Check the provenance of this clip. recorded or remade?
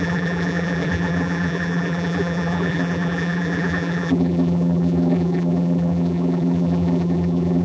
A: remade